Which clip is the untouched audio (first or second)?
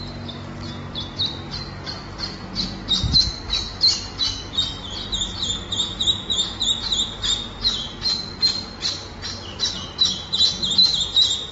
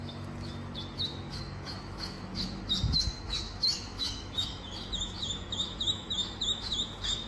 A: first